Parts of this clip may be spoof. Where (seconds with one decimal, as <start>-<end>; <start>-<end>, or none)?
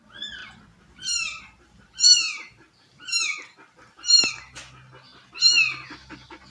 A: 0.4-4.3